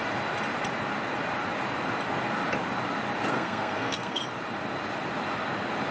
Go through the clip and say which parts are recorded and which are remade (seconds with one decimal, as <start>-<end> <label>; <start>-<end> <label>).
0.0-3.3 recorded; 3.3-4.2 remade; 4.2-5.9 recorded